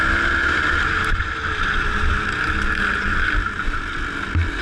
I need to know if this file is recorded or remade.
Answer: recorded